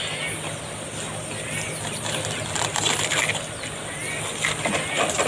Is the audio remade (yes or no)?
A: no